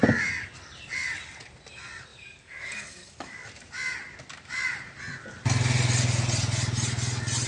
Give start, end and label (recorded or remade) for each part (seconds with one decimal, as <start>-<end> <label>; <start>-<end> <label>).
0.0-2.1 recorded; 2.1-3.5 remade; 3.5-7.5 recorded